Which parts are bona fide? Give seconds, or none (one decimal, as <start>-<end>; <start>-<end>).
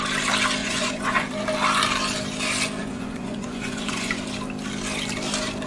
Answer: 0.0-0.6; 1.3-2.8; 4.2-5.7